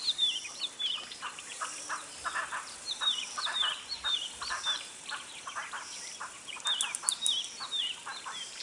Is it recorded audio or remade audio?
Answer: remade